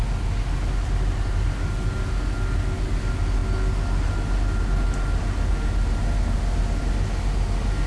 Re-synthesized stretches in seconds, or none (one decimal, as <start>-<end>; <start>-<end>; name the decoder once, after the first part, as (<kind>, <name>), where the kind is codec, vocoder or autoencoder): none

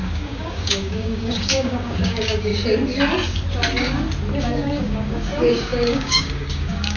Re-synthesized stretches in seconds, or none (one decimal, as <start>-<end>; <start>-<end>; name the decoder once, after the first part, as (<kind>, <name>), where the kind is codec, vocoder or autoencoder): 0.0-2.5 (codec, DAC); 4.4-7.0

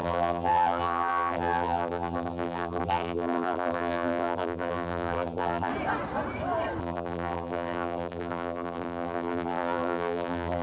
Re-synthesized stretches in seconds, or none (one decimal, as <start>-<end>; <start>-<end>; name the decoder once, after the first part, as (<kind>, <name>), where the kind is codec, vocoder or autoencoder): 0.0-5.7 (vocoder, BigVGAN v2); 6.8-10.6

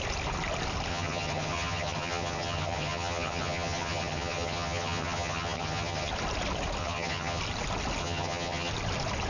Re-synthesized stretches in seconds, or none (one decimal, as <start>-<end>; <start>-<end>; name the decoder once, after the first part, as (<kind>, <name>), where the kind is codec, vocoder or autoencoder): 0.9-6.1 (vocoder, HiFi-GAN); 6.8-7.4; 8.0-8.7

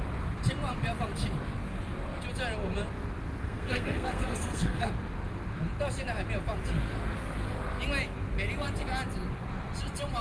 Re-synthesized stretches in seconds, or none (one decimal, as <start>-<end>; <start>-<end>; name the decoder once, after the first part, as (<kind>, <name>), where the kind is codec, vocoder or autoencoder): 3.4-4.9 (codec, SNAC)

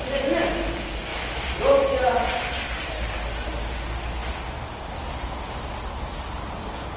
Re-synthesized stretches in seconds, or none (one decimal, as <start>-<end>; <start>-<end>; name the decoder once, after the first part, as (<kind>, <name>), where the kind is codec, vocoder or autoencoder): none

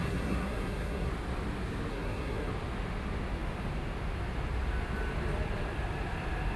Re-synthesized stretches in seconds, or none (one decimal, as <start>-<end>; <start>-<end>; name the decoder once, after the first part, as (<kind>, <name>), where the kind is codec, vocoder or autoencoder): 0.0-1.1 (codec, SNAC); 1.9-2.5